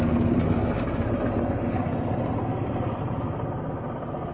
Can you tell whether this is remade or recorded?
recorded